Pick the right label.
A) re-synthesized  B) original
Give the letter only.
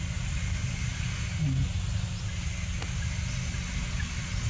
B